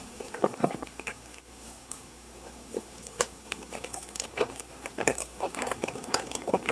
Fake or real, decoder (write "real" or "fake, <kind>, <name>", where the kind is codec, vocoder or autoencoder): fake, codec, SNAC